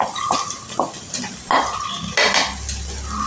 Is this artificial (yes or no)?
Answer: no